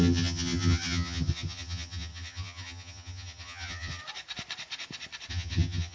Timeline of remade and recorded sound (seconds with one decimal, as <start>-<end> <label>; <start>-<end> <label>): 0.0-4.0 remade; 4.0-5.3 recorded; 5.3-5.9 remade